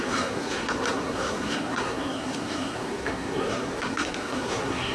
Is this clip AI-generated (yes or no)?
yes